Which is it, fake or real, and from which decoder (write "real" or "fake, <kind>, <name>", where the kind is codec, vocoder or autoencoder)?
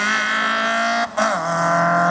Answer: real